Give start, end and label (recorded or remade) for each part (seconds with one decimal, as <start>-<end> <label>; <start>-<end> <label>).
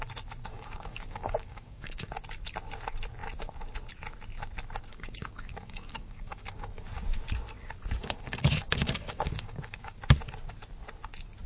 0.0-0.5 recorded; 0.5-2.1 remade; 2.1-4.9 recorded; 4.9-6.8 remade; 6.8-8.0 recorded; 8.0-10.0 remade; 10.0-11.5 recorded